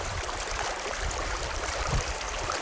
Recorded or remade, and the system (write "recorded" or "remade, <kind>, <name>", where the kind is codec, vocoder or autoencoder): remade, vocoder, BigVGAN v2